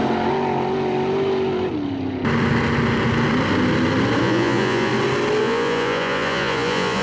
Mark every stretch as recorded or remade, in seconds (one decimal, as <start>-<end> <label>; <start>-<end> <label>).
0.0-4.2 recorded; 4.2-4.9 remade; 4.9-5.4 recorded; 5.4-7.0 remade